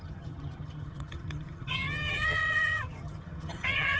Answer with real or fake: fake